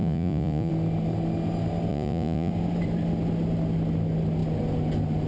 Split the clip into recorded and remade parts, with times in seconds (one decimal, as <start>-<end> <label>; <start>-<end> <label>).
0.0-0.7 remade; 0.7-1.9 recorded; 1.9-2.5 remade; 2.5-5.3 recorded